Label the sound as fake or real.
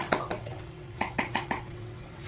fake